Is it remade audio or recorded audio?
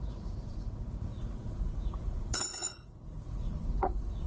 remade